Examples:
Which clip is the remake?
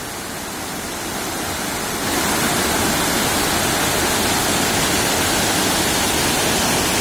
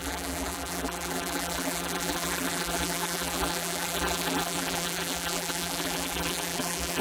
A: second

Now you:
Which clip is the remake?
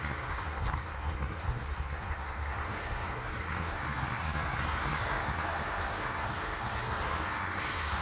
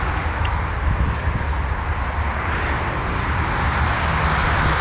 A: first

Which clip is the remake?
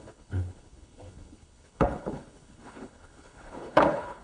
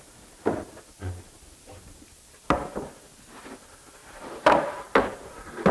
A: first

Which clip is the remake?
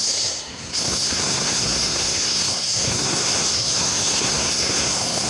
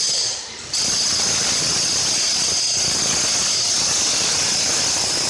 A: first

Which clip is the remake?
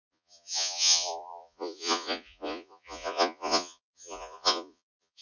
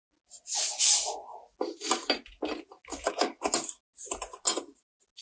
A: first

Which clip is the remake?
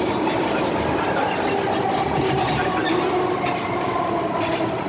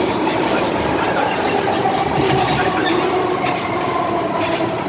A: second